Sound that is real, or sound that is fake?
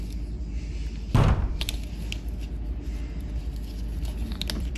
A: real